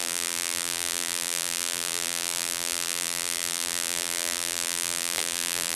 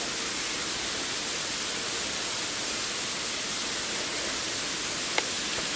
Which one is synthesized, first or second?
first